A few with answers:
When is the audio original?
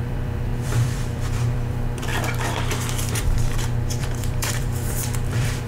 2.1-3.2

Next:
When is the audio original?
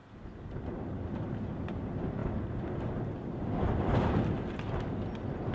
0.0-2.2; 4.4-5.5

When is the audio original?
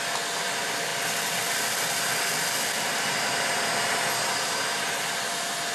0.0-5.7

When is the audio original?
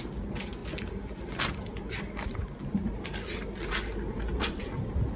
0.0-5.2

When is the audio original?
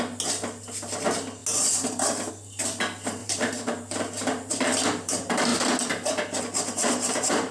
0.0-3.2; 5.1-7.5